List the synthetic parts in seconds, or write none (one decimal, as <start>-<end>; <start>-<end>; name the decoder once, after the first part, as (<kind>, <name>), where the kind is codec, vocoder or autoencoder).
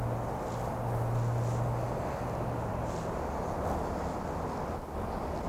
none